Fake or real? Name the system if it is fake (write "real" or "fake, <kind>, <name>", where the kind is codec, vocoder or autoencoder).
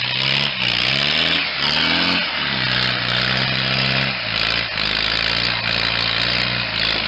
real